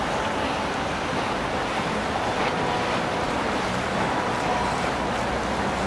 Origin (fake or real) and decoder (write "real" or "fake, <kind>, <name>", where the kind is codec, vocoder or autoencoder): real